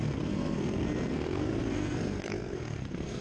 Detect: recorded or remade remade